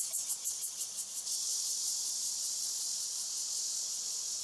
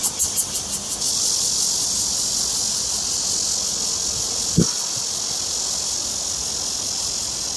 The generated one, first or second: first